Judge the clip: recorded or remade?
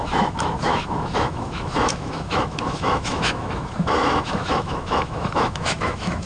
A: remade